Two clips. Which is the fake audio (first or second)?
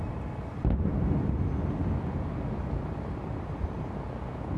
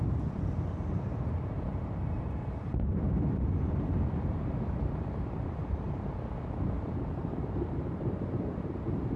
second